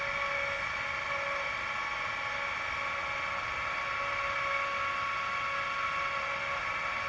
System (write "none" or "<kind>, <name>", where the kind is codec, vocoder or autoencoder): none